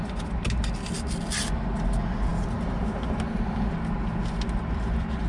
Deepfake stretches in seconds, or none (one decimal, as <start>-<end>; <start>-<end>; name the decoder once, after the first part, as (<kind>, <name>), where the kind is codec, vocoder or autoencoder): none